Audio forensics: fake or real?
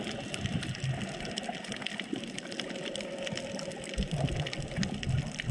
real